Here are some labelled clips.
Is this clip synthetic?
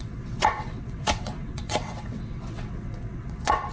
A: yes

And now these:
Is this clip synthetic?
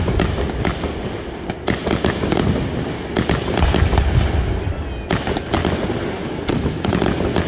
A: no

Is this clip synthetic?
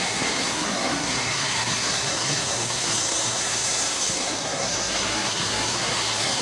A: yes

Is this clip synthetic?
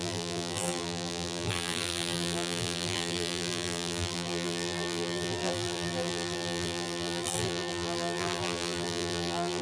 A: yes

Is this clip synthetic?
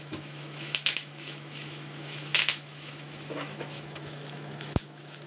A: yes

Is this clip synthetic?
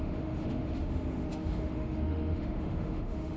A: yes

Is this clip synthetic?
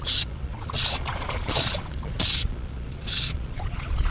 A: yes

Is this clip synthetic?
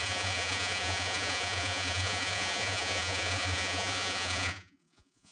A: yes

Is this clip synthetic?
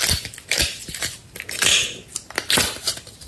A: no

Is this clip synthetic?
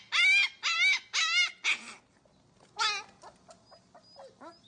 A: no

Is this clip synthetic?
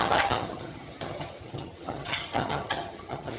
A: yes